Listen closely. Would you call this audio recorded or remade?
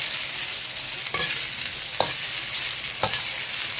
recorded